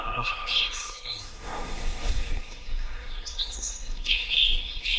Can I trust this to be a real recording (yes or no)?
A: no